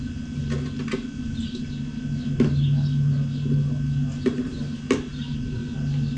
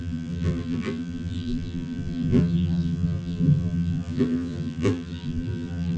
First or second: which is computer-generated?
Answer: second